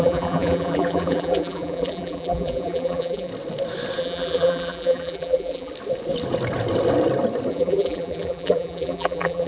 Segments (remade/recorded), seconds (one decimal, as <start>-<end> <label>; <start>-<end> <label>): 0.0-3.3 remade; 3.3-4.0 recorded; 4.0-5.7 remade; 5.7-7.5 recorded; 7.5-9.5 remade

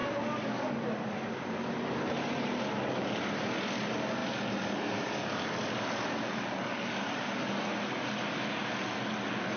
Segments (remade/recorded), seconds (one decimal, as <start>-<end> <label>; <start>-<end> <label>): 0.0-9.6 recorded

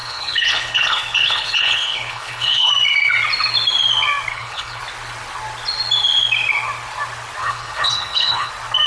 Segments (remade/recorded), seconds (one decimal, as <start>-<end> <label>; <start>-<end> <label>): 0.0-2.7 remade; 2.7-4.3 recorded; 4.3-4.8 remade; 4.8-7.4 recorded; 7.4-8.5 remade; 8.5-8.9 recorded

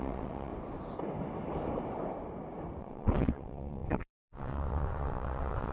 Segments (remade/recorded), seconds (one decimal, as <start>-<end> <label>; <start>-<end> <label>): 0.0-0.5 remade; 0.5-2.8 recorded; 2.8-5.7 remade

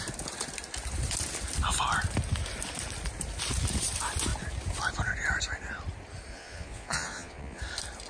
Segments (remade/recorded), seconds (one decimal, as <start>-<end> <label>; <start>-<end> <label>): 0.0-6.3 recorded; 6.3-7.6 remade; 7.6-8.1 recorded

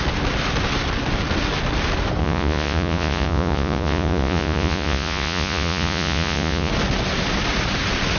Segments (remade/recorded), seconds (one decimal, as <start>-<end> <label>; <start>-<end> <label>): 0.0-2.2 recorded; 2.2-6.7 remade; 6.7-8.2 recorded

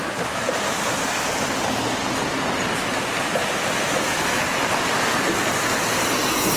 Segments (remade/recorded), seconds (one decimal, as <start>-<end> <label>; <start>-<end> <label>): 0.0-3.8 recorded; 3.8-4.4 remade; 4.4-6.6 recorded

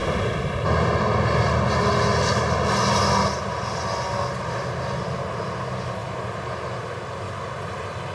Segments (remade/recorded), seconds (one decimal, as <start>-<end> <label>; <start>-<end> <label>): 0.0-8.1 recorded